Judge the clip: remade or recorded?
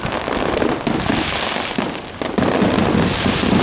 recorded